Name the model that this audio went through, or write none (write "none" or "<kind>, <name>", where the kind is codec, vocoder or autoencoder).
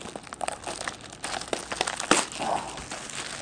none